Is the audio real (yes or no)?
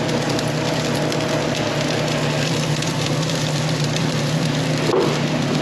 no